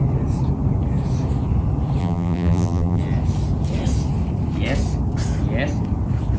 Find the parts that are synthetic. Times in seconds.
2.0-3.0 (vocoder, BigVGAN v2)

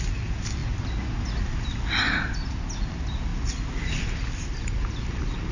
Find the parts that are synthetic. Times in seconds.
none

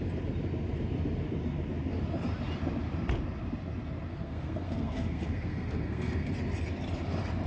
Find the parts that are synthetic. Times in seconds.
4.1-6.3 (codec, SNAC)